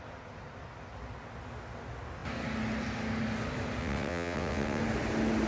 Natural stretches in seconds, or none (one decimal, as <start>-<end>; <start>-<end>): 0.0-3.8; 4.8-5.5